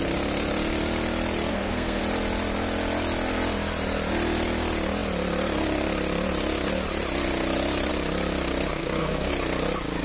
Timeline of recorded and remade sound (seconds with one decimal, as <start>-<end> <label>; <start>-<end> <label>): 0.0-1.5 recorded; 1.5-2.0 remade; 2.0-8.7 recorded; 8.7-9.3 remade; 9.3-10.0 recorded